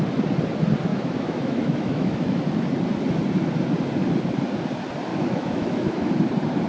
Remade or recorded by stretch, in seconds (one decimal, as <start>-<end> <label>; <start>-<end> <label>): 0.0-0.9 recorded; 0.9-2.4 remade; 2.4-5.1 recorded; 5.1-6.1 remade; 6.1-6.7 recorded